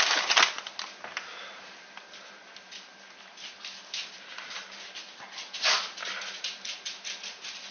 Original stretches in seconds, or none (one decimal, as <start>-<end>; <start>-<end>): 0.0-7.7